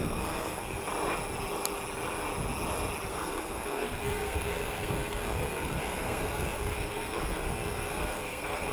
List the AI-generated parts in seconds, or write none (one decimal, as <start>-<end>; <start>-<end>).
0.0-0.8; 3.1-8.7